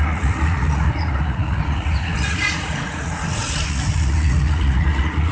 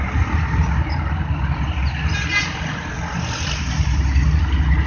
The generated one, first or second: first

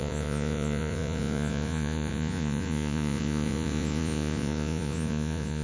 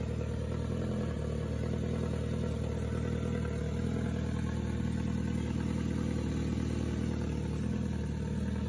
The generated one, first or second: first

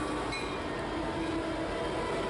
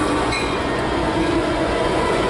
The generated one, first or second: second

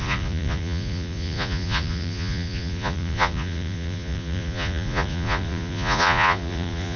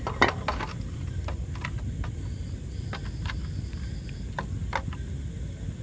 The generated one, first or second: first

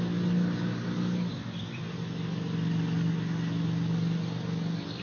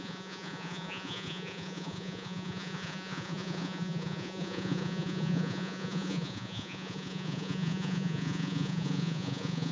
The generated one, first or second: second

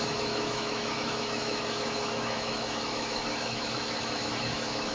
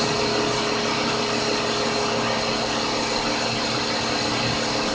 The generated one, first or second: first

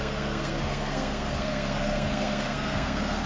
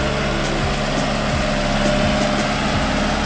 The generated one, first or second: first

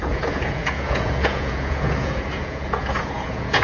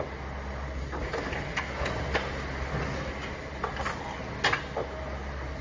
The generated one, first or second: first